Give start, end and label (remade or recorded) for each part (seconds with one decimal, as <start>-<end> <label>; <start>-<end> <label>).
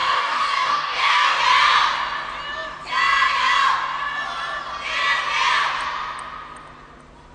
0.0-1.4 remade; 1.4-7.3 recorded